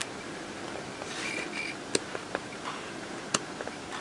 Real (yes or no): yes